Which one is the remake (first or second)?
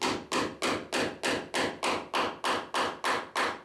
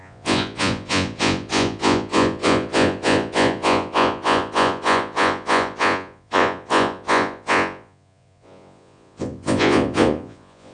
second